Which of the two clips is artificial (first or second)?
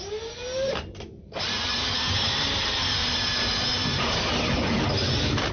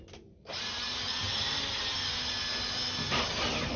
first